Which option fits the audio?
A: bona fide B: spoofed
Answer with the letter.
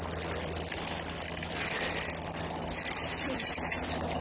A